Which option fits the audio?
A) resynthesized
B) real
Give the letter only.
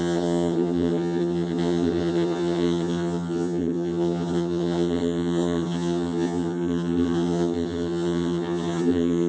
A